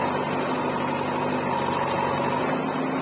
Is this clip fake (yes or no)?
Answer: no